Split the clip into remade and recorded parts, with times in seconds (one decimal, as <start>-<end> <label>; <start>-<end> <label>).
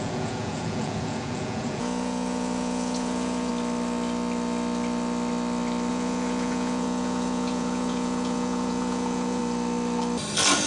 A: 0.0-3.5 remade; 3.5-5.9 recorded; 5.9-9.4 remade; 9.4-10.7 recorded